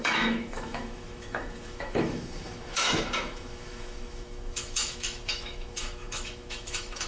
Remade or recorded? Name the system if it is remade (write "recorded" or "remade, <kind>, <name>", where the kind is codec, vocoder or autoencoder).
remade, autoencoder, DAC-VAE